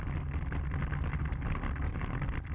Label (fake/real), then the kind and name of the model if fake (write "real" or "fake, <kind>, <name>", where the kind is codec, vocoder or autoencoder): real